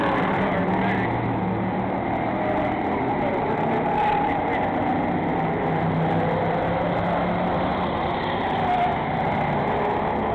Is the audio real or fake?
real